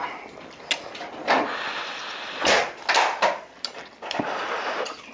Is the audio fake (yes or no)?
no